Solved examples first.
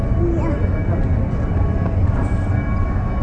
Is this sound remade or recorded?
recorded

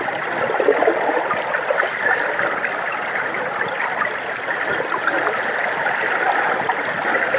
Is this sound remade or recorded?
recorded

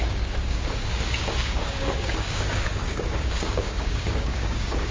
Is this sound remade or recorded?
remade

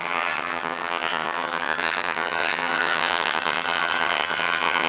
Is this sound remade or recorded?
remade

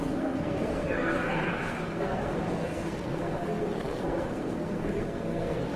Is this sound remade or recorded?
remade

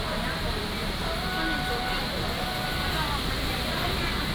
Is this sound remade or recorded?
recorded